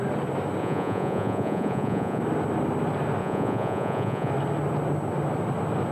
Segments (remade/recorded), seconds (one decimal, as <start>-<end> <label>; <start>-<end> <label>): 0.0-0.6 recorded; 0.6-2.2 remade; 2.2-3.2 recorded; 3.2-4.3 remade; 4.3-5.9 recorded